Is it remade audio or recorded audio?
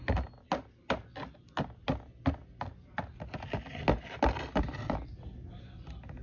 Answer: recorded